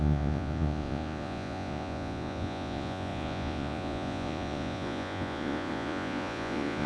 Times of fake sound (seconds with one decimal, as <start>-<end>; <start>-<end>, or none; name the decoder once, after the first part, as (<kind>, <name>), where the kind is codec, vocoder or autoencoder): 0.0-6.9 (vocoder, Vocos)